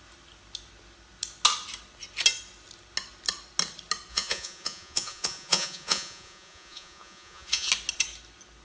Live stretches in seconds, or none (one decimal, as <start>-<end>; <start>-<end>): 0.0-4.1; 7.7-8.6